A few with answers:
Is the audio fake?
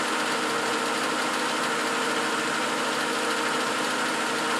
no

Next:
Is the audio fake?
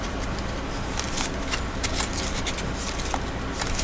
yes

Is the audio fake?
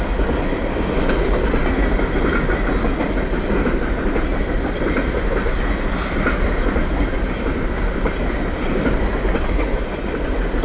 no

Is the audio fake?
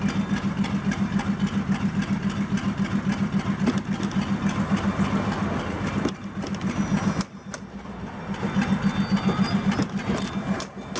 no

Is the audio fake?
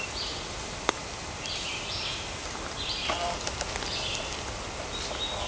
no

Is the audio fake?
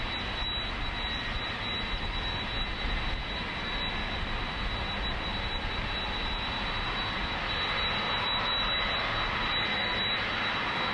no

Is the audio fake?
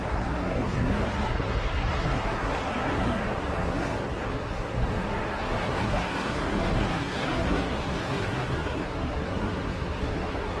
yes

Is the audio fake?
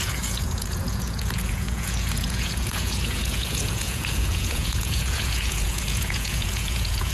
yes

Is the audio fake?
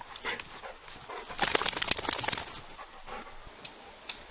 no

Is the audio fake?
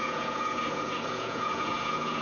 yes